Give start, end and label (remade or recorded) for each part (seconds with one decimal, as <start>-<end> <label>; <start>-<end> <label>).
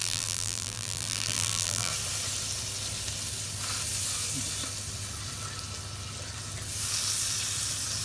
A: 0.0-1.9 remade; 1.9-8.0 recorded